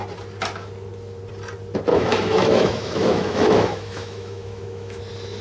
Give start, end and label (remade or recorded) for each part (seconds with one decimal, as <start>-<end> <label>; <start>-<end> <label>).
0.0-1.9 recorded; 1.9-5.0 remade; 5.0-5.4 recorded